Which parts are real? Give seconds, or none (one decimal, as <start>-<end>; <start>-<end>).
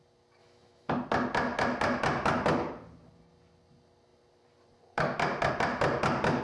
0.0-0.4; 0.9-6.4